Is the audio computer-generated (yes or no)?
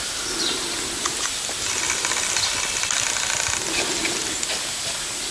no